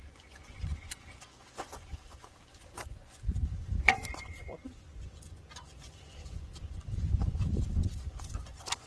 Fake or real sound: fake